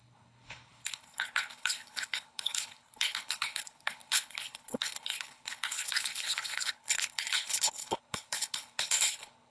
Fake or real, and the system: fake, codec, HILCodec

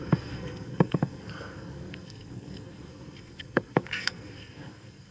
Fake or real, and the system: fake, codec, SNAC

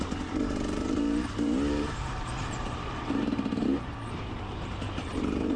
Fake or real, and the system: fake, vocoder, BigVGAN v2